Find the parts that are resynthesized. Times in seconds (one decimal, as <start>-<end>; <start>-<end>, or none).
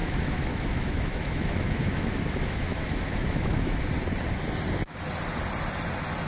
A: 0.0-3.8